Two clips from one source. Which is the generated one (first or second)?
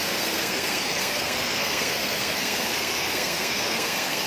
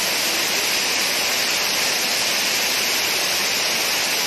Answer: first